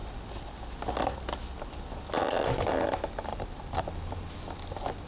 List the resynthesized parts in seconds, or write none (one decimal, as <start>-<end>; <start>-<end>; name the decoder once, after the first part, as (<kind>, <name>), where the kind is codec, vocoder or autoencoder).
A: 3.3-4.3 (vocoder, BigVGAN v2)